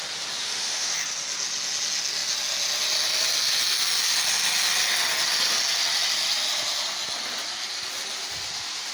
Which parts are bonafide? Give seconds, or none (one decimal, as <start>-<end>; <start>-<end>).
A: 0.0-0.4; 0.9-8.9